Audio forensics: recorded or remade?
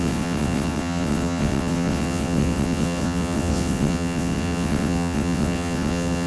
remade